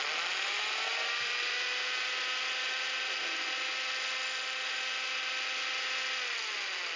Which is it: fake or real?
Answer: real